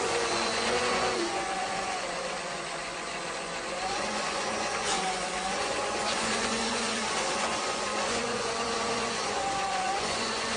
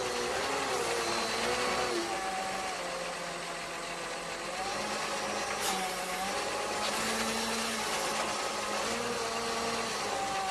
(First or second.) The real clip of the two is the second